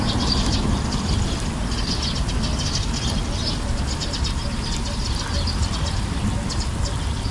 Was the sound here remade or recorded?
recorded